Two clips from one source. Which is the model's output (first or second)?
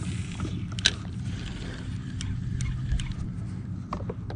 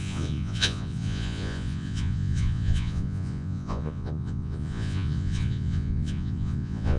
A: second